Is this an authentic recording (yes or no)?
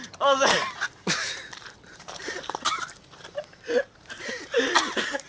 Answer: no